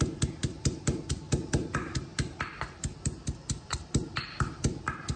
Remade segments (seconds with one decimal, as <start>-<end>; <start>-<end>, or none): none